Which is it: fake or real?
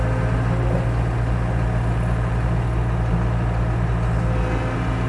real